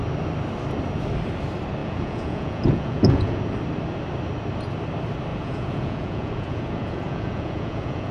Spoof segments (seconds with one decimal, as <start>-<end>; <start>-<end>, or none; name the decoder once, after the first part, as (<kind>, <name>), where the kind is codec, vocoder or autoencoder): 1.8-3.4 (vocoder, Vocos); 5.3-8.1